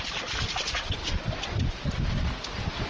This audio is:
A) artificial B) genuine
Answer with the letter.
B